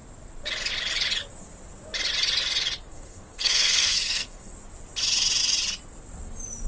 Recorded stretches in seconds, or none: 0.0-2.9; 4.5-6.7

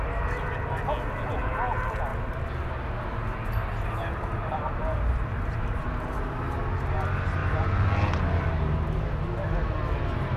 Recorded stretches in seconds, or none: 0.0-10.4

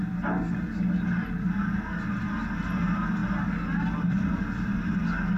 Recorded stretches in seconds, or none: 0.0-5.4